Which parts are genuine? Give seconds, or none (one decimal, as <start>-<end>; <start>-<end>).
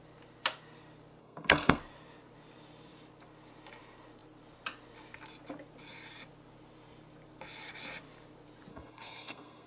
0.0-1.2; 1.8-8.7